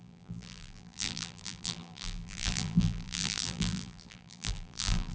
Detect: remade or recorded remade